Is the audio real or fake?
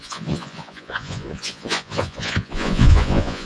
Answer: fake